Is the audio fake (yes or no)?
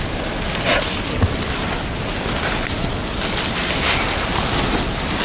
no